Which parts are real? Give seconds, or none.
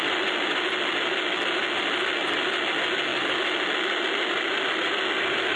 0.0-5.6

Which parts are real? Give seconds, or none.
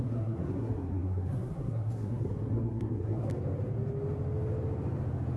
3.3-5.4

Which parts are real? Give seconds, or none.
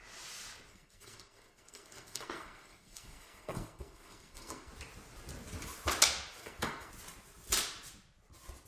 0.0-0.7; 4.7-6.4; 6.9-8.7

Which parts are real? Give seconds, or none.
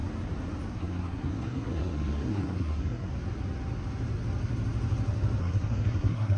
0.0-0.7; 3.1-5.4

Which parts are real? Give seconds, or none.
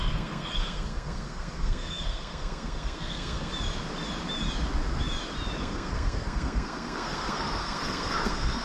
3.5-5.6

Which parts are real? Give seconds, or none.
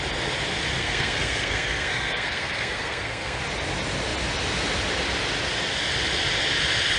0.0-0.8; 3.4-7.0